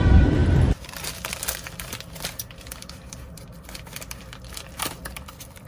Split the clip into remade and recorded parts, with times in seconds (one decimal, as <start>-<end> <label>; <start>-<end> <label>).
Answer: 0.0-5.7 remade